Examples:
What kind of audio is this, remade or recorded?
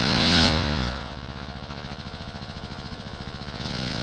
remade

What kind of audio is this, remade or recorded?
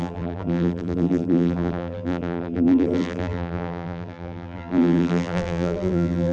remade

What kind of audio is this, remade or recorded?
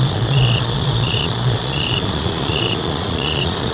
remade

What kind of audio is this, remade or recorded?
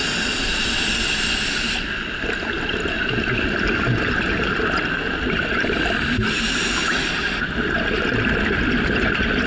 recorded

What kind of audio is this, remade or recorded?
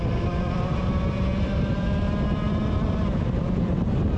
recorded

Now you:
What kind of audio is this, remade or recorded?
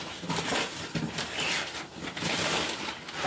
recorded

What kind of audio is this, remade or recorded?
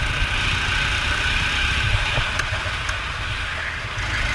recorded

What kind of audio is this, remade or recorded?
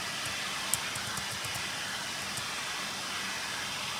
recorded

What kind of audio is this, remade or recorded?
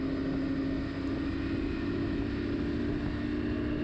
recorded